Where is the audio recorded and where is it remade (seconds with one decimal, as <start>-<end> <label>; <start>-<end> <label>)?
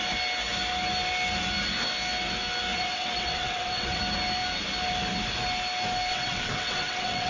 0.0-2.7 recorded; 2.7-4.0 remade; 4.0-6.1 recorded; 6.1-7.3 remade